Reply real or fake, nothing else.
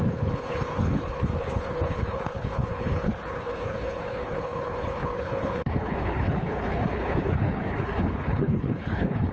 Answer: fake